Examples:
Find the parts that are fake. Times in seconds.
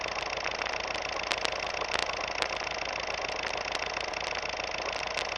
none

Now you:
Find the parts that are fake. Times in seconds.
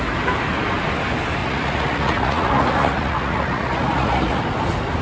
1.4-4.4 (vocoder, Vocos)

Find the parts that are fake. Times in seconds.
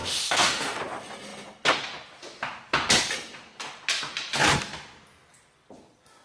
0.0-0.8 (autoencoder, DAC-VAE)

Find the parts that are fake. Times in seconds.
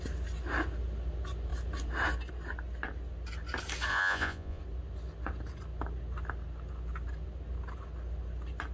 3.9-4.6 (vocoder, Vocos)